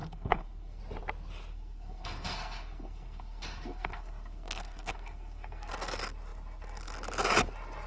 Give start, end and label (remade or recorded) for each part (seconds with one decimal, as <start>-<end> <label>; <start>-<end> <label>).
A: 0.0-0.8 remade; 0.8-1.5 recorded; 1.5-5.7 remade; 5.7-7.9 recorded

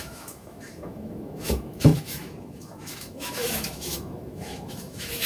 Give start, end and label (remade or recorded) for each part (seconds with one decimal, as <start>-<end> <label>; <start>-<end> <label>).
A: 0.0-5.3 remade

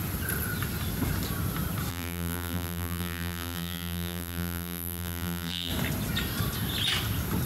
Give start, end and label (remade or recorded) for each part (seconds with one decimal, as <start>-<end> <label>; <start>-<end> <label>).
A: 0.0-1.9 recorded; 1.9-5.7 remade; 5.7-7.5 recorded

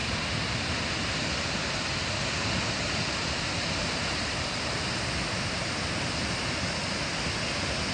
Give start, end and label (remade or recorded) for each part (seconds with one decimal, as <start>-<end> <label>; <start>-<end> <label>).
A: 0.0-7.9 recorded

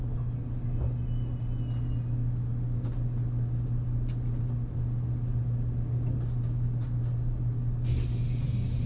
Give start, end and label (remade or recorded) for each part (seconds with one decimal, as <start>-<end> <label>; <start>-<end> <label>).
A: 0.0-8.9 recorded

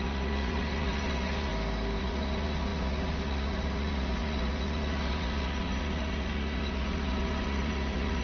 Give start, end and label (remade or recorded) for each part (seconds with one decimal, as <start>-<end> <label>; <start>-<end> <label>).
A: 0.0-1.5 remade; 1.5-2.0 recorded; 2.0-8.2 remade